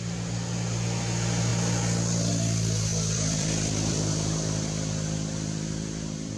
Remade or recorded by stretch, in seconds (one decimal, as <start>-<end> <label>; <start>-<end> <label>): 0.0-2.9 recorded; 2.9-6.4 remade